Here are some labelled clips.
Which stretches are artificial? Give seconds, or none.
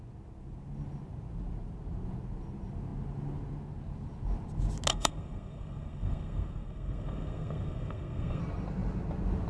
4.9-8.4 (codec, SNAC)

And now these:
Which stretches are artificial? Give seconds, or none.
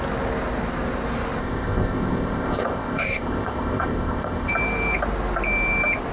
1.4-4.5 (codec, ZipCodec)